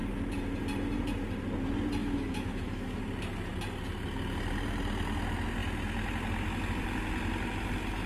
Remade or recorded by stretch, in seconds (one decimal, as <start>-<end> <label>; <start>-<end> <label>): 0.0-2.0 recorded; 2.0-3.0 remade; 3.0-8.1 recorded